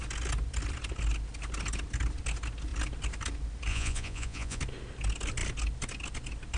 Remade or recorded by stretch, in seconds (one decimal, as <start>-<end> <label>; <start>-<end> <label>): 0.0-3.7 recorded; 3.7-4.6 remade; 4.6-6.6 recorded